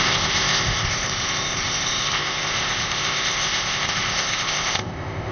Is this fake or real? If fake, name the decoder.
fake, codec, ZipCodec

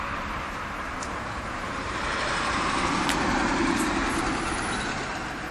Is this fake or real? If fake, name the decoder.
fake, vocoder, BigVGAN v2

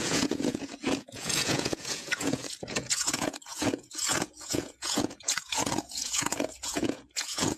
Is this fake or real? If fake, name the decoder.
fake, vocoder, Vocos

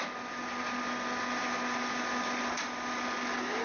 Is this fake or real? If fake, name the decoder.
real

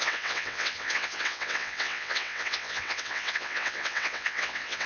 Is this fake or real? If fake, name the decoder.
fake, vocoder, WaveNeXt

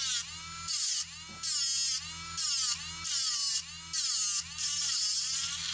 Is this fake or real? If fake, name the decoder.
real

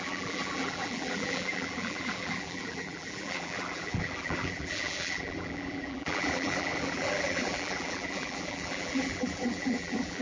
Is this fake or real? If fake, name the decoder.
fake, vocoder, BigVGAN v2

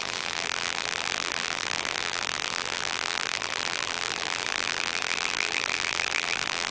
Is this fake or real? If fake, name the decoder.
fake, vocoder, BigVGAN v2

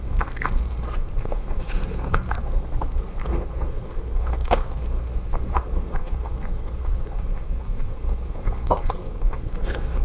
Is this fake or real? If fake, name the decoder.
fake, codec, SNAC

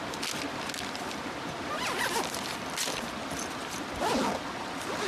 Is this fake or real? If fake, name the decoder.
real